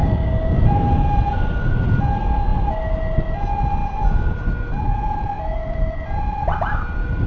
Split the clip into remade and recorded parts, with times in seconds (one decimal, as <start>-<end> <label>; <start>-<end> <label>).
0.0-0.6 remade; 0.6-7.3 recorded